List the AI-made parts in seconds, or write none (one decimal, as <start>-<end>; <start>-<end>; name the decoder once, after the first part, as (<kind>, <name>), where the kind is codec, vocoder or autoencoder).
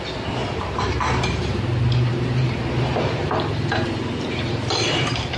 0.4-1.7 (vocoder, BigVGAN v2); 2.1-5.4